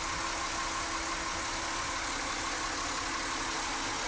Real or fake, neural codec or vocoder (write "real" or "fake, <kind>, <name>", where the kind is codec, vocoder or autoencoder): real